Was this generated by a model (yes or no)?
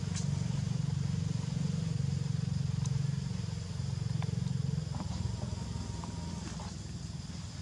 no